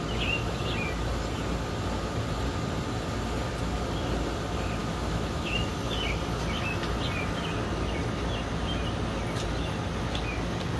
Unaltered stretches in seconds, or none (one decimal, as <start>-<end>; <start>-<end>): 0.0-4.8; 5.7-10.8